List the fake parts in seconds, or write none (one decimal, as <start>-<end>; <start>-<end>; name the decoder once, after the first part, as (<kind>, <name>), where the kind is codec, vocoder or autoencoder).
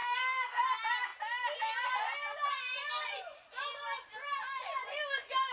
0.0-0.6 (codec, SNAC)